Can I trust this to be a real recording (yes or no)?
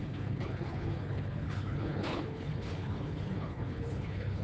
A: no